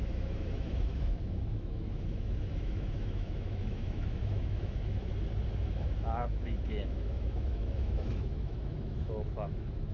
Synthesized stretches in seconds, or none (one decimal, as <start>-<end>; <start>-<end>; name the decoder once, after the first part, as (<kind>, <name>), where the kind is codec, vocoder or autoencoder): 0.0-5.1 (autoencoder, DAC-VAE); 5.6-9.9